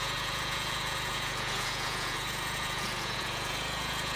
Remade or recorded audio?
remade